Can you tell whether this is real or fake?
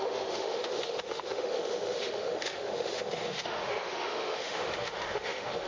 fake